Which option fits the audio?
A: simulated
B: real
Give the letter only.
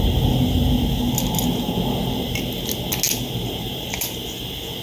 B